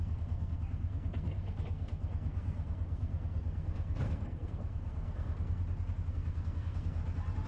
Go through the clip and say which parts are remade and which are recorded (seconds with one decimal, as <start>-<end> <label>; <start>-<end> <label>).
0.0-5.6 remade; 5.6-6.1 recorded; 6.1-7.0 remade; 7.0-7.5 recorded